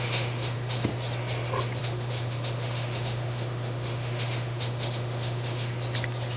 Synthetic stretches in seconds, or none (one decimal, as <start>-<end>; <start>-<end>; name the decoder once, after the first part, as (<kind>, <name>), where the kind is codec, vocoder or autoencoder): 0.0-0.9 (autoencoder, DAC-VAE); 1.8-5.7